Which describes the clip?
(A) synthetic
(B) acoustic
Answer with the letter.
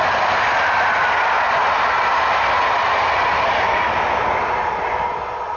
B